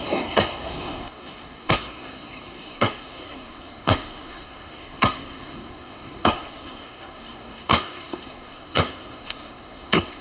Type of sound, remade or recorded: remade